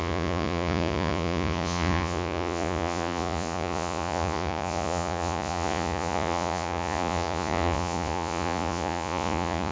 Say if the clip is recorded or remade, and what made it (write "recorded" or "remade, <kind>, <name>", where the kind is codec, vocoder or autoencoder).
remade, vocoder, Vocos